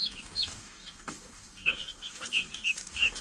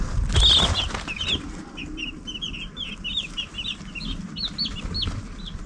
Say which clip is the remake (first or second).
first